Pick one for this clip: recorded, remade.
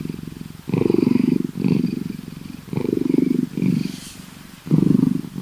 remade